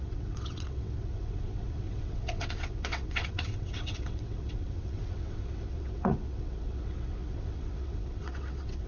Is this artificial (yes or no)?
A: yes